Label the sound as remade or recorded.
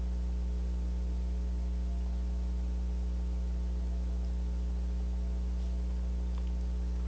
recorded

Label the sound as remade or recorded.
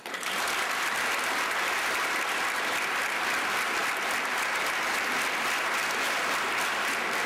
recorded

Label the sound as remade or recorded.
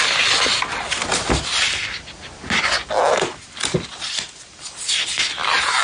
recorded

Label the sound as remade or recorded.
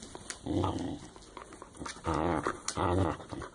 recorded